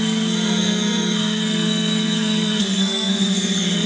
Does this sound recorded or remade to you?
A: remade